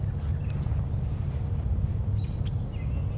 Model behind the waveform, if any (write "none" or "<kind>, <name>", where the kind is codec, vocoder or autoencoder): none